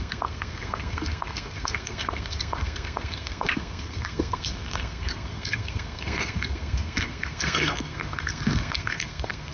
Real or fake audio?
fake